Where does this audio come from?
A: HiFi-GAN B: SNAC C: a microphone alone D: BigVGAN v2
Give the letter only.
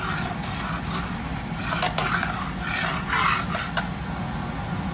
C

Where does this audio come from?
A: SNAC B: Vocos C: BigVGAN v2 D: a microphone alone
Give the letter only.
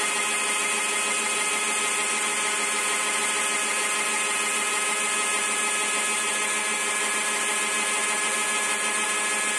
D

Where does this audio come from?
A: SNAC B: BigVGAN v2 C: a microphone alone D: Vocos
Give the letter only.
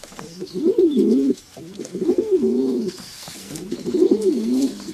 A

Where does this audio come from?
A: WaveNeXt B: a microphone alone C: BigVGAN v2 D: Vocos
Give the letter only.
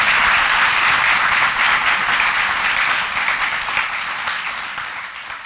B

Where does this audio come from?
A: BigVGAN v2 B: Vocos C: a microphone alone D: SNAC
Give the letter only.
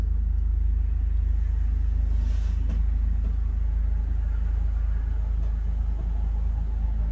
C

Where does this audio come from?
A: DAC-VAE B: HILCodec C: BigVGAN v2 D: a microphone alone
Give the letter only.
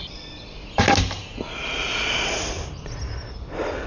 D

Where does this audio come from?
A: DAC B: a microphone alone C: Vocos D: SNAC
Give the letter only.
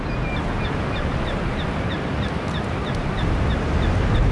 B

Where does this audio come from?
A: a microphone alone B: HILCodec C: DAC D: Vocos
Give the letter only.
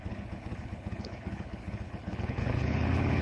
B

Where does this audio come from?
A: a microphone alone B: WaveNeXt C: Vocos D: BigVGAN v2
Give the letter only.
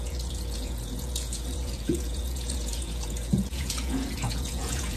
C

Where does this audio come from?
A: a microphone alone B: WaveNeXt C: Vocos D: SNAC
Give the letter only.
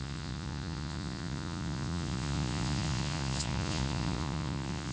C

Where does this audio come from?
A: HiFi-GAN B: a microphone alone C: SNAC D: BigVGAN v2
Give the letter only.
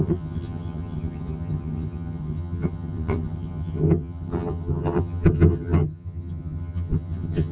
A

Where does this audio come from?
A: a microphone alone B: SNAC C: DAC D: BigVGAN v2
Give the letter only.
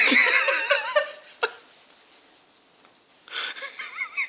A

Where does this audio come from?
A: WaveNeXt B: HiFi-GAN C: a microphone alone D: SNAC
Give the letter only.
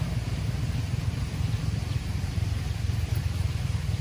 C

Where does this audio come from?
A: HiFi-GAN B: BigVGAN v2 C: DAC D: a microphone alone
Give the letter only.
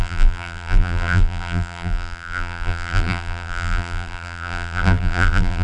B